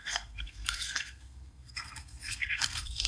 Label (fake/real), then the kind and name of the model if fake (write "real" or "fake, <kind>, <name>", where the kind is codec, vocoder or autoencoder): fake, codec, SNAC